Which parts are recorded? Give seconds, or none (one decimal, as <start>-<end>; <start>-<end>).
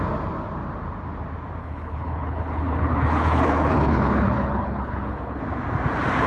0.0-1.6; 5.4-6.3